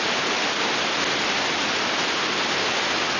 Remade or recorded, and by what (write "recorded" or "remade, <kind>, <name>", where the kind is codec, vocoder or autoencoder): recorded